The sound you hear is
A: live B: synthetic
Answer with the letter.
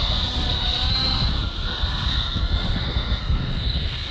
B